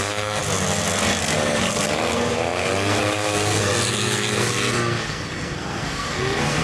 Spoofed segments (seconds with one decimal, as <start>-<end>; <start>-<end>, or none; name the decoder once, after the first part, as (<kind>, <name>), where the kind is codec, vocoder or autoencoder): 0.0-0.4 (codec, SNAC); 1.2-6.6